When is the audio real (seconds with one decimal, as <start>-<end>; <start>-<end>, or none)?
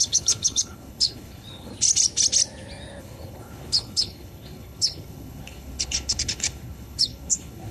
1.7-3.0